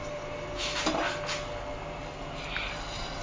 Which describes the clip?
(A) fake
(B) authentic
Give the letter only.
B